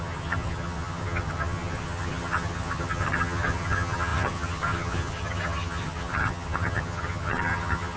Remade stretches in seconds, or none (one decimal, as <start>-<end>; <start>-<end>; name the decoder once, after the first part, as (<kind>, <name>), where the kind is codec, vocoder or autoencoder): 0.0-8.0 (vocoder, HiFi-GAN)